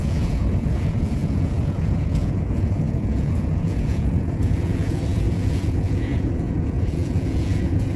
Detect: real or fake fake